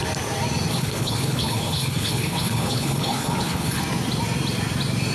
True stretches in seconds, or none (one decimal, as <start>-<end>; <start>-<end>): 0.0-0.7; 3.8-5.1